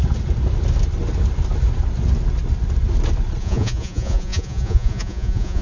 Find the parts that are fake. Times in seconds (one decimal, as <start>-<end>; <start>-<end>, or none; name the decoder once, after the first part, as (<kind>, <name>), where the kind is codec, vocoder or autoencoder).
3.4-5.6 (vocoder, Vocos)

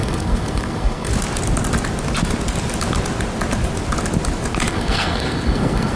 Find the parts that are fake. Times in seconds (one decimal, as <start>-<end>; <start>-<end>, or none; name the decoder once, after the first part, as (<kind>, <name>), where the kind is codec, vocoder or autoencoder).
0.0-1.1 (codec, SNAC); 4.7-6.0

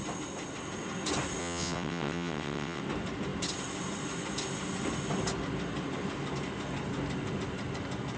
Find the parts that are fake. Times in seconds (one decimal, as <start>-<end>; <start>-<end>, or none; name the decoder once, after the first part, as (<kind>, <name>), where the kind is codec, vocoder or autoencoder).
1.4-2.8 (vocoder, WaveNeXt)

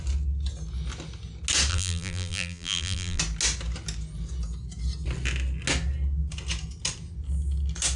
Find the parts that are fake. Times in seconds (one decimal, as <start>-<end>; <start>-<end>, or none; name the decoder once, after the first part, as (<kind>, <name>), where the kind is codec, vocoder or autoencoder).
1.7-3.2 (vocoder, BigVGAN v2)

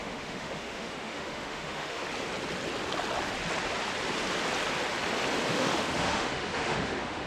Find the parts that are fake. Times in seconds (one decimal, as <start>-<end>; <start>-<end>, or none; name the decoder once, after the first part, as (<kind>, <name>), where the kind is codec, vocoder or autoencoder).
0.0-2.0 (autoencoder, DAC-VAE); 5.5-7.3

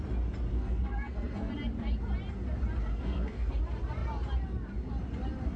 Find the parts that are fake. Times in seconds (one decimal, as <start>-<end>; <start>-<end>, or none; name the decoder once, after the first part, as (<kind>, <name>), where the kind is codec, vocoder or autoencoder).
0.5-1.5 (codec, SNAC); 2.9-3.5